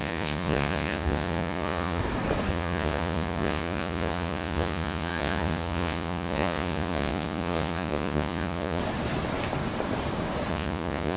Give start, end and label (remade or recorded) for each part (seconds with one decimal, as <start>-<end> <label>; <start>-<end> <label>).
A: 0.0-2.0 remade; 2.0-2.5 recorded; 2.5-8.8 remade; 8.8-10.5 recorded; 10.5-11.2 remade